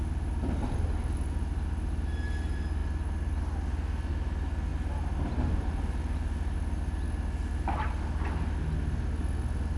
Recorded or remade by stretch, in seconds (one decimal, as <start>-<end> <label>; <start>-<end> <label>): 0.0-9.8 recorded